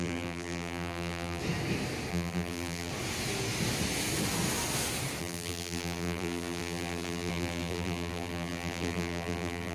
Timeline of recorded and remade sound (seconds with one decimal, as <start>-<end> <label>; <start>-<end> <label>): 0.0-1.4 remade; 1.4-2.1 recorded; 2.1-2.9 remade; 2.9-5.2 recorded; 5.2-9.7 remade